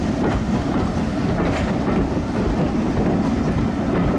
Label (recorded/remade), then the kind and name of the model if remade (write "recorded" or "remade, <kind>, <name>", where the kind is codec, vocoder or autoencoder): recorded